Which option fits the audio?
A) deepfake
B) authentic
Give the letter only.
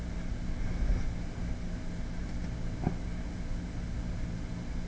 B